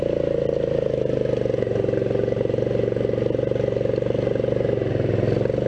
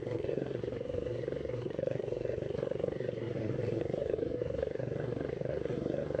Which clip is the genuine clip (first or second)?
first